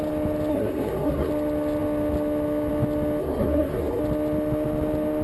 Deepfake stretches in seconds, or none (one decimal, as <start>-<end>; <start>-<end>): 0.5-1.3; 3.2-4.0